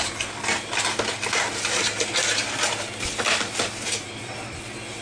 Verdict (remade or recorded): recorded